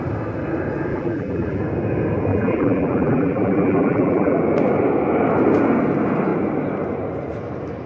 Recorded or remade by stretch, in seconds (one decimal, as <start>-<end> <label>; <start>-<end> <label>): 0.0-0.9 recorded; 0.9-1.6 remade; 1.6-2.3 recorded; 2.3-4.4 remade; 4.4-7.9 recorded